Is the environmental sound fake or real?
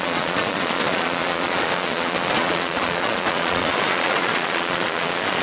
fake